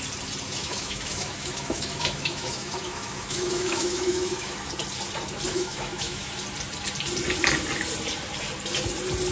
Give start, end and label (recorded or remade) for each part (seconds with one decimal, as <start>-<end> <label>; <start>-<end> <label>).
0.0-0.6 recorded; 0.6-4.7 remade; 4.7-5.5 recorded; 5.5-6.3 remade; 6.3-9.3 recorded